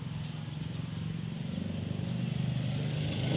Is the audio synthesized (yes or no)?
no